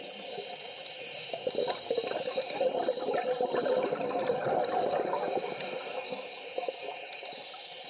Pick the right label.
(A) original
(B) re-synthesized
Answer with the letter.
A